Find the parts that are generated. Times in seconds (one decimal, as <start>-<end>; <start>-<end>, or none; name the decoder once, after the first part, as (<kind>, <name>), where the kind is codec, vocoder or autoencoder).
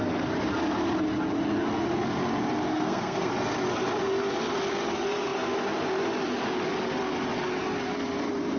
2.7-3.3 (codec, SNAC)